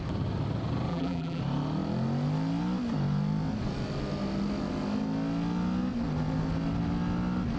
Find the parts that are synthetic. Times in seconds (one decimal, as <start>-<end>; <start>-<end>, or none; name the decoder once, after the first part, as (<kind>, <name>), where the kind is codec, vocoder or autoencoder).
0.9-1.4 (vocoder, BigVGAN v2)